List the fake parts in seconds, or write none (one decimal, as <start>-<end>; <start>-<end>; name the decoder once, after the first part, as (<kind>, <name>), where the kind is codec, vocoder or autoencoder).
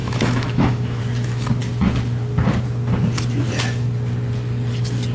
0.0-1.0 (autoencoder, DAC-VAE)